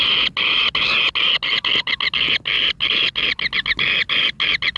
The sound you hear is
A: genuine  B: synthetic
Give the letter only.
A